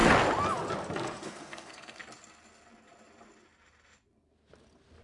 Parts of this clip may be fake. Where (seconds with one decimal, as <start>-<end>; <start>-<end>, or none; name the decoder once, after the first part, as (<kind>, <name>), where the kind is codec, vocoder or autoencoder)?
1.2-2.0 (codec, SNAC)